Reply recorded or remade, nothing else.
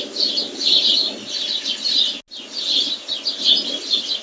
recorded